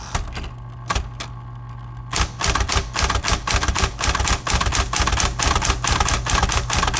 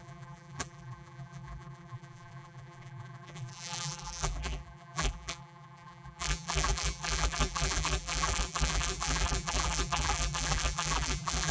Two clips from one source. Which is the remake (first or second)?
second